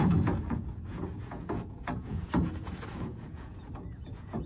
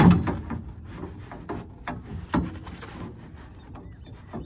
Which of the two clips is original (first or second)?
second